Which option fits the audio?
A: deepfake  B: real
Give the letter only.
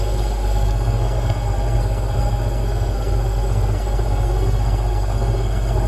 A